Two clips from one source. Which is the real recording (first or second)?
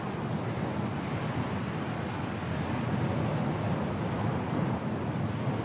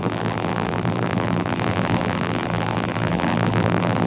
first